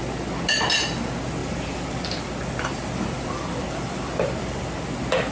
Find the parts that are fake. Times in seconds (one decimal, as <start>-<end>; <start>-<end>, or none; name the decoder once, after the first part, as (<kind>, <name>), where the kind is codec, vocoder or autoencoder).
1.4-4.6 (vocoder, BigVGAN v2)